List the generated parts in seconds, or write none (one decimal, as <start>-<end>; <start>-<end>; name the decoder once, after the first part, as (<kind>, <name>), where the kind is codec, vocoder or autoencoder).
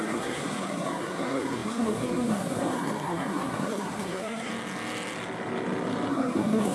0.0-4.5 (codec, SNAC); 6.1-6.7